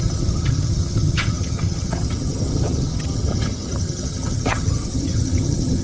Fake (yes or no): yes